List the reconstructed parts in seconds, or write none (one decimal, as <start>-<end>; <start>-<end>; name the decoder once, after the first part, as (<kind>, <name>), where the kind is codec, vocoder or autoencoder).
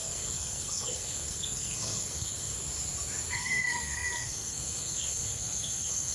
0.0-2.5 (codec, SNAC); 3.3-6.1